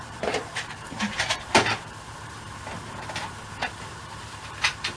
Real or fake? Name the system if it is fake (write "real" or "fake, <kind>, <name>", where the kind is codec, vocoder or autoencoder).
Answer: fake, vocoder, BigVGAN v2